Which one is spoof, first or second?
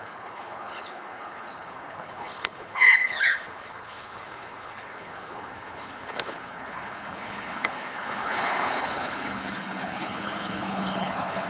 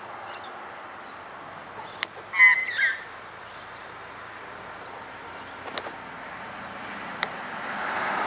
first